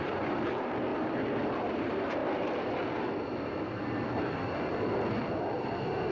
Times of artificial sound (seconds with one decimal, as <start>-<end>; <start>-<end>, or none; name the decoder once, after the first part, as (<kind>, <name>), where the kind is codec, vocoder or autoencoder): 0.0-0.9 (vocoder, BigVGAN v2); 1.6-2.2